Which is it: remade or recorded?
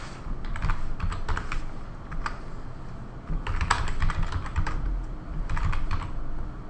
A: recorded